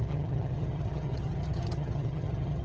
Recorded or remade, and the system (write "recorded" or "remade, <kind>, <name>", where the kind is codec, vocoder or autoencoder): remade, vocoder, HiFi-GAN